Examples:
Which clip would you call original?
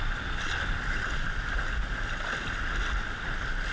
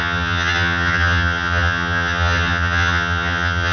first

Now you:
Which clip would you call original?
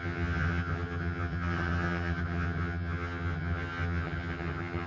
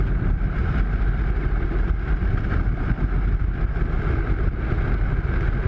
second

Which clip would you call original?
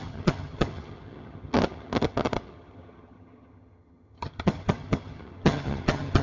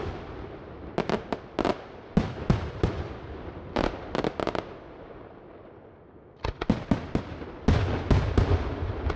second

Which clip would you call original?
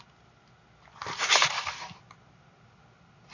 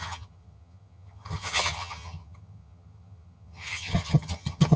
first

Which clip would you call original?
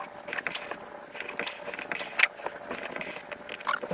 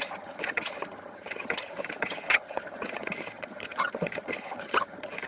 first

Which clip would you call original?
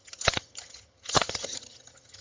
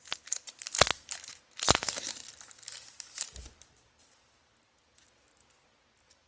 second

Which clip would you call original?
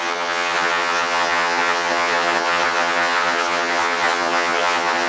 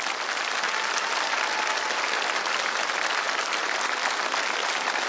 second